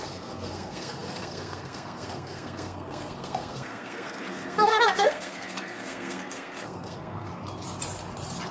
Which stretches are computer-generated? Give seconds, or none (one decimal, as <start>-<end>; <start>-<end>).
0.0-7.3